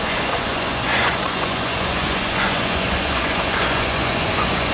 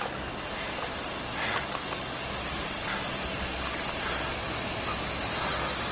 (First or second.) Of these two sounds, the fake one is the first